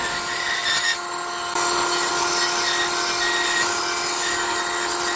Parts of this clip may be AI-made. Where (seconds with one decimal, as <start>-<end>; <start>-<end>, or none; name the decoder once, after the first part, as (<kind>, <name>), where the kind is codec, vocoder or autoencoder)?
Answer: none